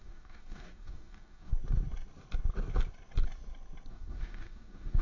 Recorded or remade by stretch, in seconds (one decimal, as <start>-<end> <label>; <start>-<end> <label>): 0.0-1.5 remade; 1.5-3.9 recorded; 3.9-5.0 remade